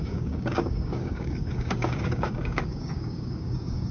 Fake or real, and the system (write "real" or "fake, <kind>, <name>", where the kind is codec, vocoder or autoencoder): fake, codec, DAC